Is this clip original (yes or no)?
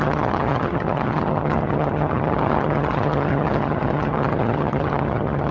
no